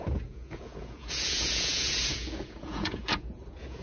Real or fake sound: fake